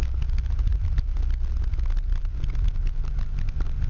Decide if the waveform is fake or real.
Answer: real